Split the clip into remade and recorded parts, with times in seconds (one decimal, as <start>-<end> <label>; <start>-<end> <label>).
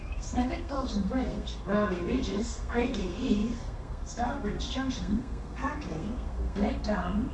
0.0-7.3 remade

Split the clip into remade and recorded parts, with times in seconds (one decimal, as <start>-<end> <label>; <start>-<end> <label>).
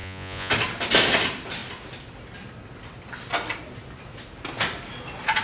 0.0-0.5 remade; 0.5-5.4 recorded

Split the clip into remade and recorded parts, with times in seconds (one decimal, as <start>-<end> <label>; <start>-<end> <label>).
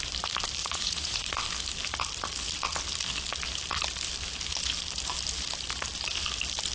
0.0-0.6 recorded; 0.6-1.3 remade; 1.3-6.7 recorded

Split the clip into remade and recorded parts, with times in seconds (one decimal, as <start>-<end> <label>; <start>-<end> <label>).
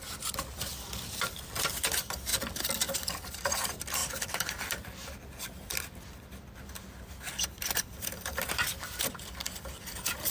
0.0-0.7 remade; 0.7-1.7 recorded; 1.7-10.3 remade